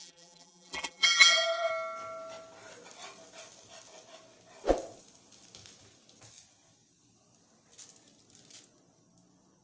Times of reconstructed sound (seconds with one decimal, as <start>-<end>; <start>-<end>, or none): 0.0-1.7